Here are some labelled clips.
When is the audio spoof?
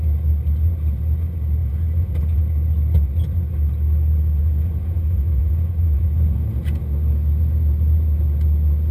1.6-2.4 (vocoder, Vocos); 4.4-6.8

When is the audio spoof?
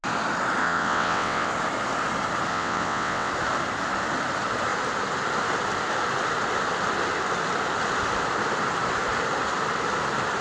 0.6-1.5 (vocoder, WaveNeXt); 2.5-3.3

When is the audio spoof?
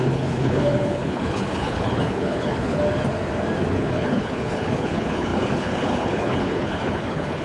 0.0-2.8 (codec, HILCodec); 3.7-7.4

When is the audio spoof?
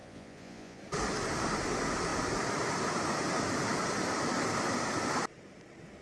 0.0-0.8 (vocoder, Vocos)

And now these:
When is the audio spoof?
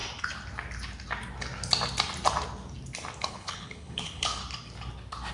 3.2-4.4 (codec, HILCodec)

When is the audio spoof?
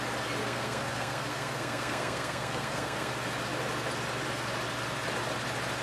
0.4-3.1 (codec, SNAC)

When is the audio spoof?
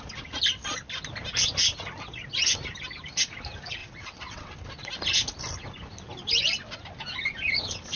3.8-4.5 (vocoder, WaveNeXt)